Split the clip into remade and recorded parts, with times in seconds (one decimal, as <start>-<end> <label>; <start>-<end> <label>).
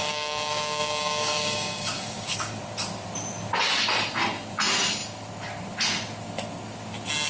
0.0-2.5 remade; 2.5-7.3 recorded